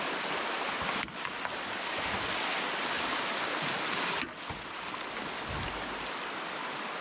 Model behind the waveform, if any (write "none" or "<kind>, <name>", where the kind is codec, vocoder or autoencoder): none